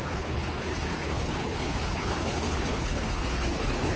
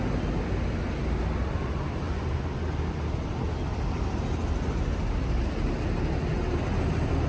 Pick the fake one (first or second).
first